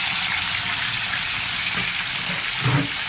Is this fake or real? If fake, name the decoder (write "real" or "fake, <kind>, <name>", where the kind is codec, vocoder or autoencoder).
real